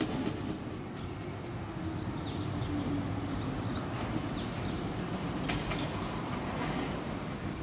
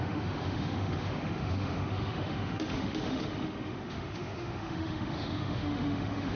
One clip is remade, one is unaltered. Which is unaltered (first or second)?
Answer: first